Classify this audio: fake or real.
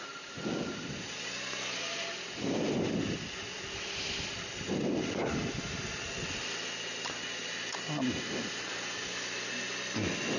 real